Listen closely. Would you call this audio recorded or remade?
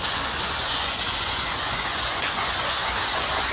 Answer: remade